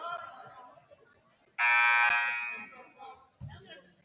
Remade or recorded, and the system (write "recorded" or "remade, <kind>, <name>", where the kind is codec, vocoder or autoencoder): recorded